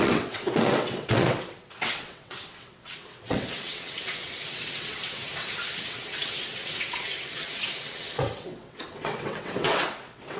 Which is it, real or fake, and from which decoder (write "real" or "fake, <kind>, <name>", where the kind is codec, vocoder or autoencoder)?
fake, vocoder, WaveNeXt